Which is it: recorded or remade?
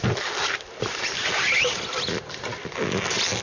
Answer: recorded